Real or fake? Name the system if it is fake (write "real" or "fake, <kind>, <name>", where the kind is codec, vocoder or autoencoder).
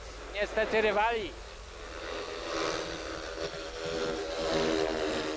real